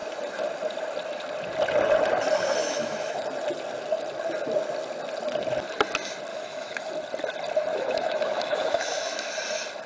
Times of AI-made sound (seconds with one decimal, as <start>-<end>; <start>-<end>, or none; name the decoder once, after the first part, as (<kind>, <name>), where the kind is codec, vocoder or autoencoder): 2.6-3.2 (autoencoder, DAC-VAE); 6.3-6.8; 7.7-9.3